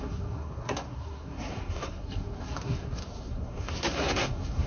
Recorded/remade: remade